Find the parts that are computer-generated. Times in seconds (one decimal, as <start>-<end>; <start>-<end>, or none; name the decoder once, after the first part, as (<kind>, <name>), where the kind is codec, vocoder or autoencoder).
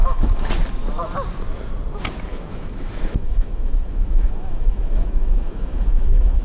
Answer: 0.0-0.5 (autoencoder, DAC-VAE); 2.3-6.4